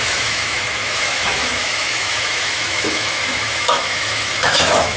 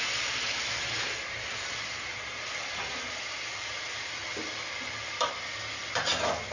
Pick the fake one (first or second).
first